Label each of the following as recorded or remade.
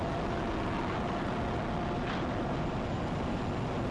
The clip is recorded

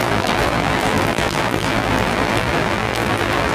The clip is remade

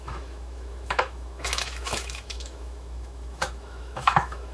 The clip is remade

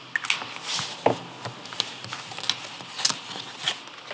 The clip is recorded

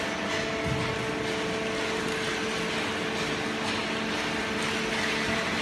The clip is recorded